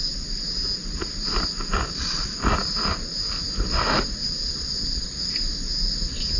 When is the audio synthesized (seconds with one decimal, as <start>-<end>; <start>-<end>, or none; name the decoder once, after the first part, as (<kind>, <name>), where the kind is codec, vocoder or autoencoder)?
4.2-5.3 (vocoder, Vocos)